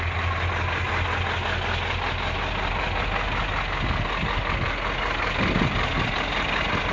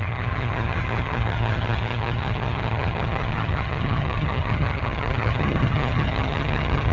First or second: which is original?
first